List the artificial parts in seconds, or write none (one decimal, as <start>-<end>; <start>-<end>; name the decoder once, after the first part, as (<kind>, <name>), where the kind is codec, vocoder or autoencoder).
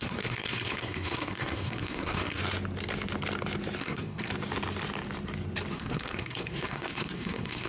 0.0-2.4 (codec, SNAC); 3.8-4.3; 5.7-7.7